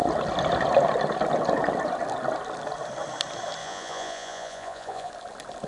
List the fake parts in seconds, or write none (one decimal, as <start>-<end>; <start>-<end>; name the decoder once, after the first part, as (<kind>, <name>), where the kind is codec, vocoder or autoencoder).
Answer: 3.6-5.1 (vocoder, Vocos)

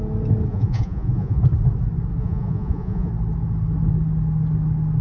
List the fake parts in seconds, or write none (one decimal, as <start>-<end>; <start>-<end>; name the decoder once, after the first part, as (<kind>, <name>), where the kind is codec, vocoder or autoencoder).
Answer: 0.5-1.4 (vocoder, Vocos); 2.2-3.1

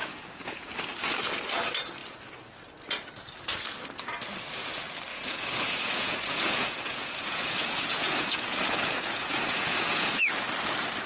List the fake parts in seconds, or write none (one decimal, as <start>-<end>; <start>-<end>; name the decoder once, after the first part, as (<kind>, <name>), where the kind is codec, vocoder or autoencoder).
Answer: 0.0-0.7 (vocoder, Vocos); 5.1-10.2

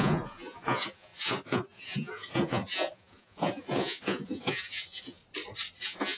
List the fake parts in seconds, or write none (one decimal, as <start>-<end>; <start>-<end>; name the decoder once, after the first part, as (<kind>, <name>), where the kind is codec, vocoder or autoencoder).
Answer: 0.0-5.2 (vocoder, Vocos); 5.8-6.2

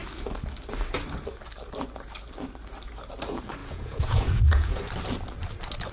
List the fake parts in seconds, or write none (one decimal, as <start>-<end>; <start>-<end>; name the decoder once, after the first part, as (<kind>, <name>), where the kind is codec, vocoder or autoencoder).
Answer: 3.6-4.8 (vocoder, Vocos)

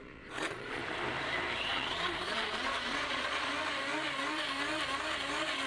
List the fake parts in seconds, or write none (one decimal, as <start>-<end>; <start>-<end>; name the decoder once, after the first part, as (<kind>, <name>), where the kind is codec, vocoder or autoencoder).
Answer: 0.0-0.8 (vocoder, Vocos); 1.6-3.5

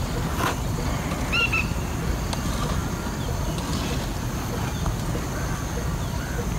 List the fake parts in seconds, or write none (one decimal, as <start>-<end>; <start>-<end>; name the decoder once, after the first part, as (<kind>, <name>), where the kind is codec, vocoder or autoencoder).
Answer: none